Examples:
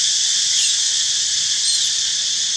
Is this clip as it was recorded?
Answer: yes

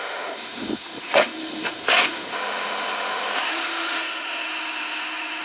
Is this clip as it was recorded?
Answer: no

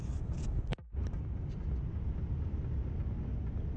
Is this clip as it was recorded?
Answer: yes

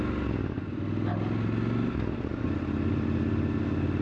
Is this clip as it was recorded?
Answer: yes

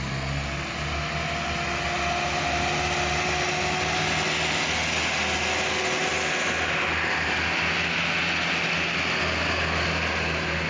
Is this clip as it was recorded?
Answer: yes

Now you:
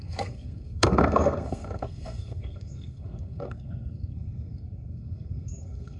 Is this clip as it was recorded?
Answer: no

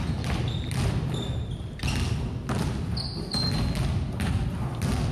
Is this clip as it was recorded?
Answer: yes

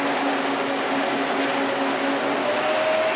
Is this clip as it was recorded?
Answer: yes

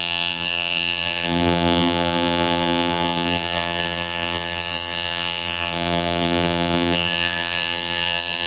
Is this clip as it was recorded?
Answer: no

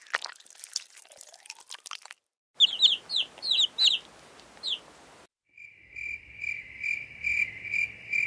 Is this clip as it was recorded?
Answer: yes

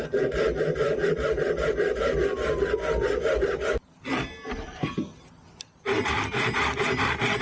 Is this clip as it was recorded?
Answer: yes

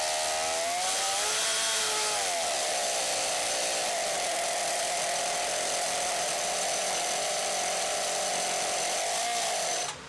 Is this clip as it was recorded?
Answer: yes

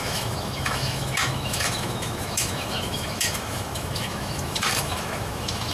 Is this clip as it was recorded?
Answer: no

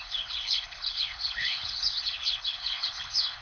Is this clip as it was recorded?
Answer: no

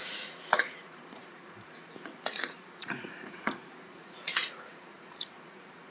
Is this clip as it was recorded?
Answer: no